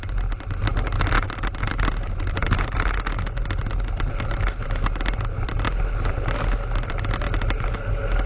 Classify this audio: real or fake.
real